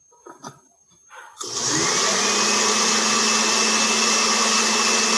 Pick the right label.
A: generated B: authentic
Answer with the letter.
B